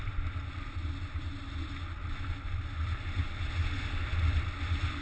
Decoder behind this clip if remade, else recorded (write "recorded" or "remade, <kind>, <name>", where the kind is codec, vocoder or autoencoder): recorded